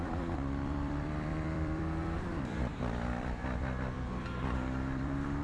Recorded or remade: remade